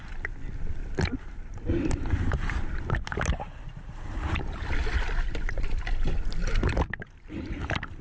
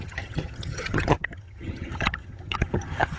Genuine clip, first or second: first